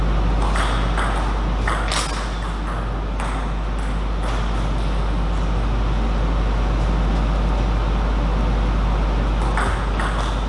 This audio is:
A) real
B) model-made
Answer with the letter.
A